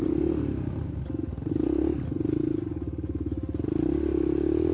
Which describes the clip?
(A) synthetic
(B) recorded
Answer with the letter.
B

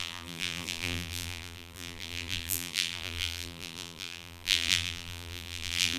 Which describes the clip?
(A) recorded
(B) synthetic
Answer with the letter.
B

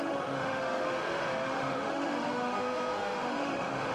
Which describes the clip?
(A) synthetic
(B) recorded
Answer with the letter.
A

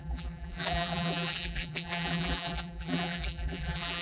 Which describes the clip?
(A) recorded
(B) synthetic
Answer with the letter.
B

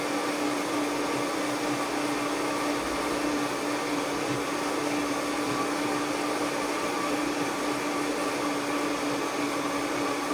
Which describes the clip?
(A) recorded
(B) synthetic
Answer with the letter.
A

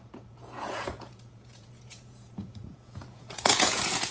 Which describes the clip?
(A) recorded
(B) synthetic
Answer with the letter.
B